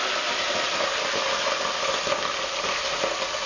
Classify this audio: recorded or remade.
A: recorded